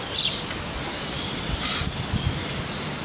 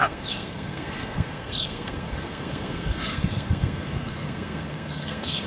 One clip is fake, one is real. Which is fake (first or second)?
second